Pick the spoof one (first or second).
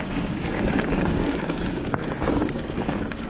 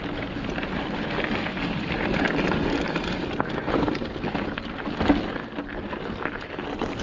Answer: first